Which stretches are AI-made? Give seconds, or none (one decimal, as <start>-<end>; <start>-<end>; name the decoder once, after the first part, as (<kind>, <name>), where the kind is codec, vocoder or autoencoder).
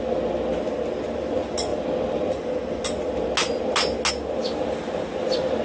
none